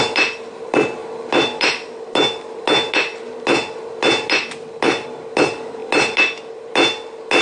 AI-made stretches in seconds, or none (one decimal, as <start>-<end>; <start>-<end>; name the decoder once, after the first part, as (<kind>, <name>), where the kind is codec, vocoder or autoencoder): none